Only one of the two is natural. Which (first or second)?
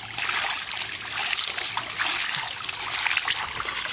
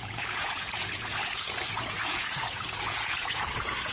first